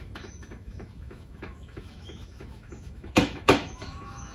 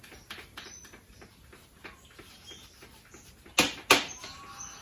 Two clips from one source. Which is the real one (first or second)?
second